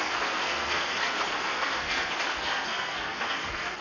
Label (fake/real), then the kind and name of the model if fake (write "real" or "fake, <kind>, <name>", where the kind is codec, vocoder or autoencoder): fake, codec, SNAC